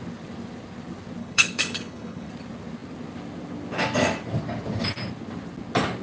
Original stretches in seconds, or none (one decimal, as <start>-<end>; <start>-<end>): 0.0-1.2; 2.3-6.0